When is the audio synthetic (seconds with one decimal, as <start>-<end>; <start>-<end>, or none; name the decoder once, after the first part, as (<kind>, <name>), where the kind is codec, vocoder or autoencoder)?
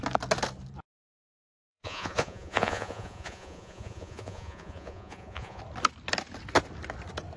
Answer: 1.2-5.6 (vocoder, Vocos)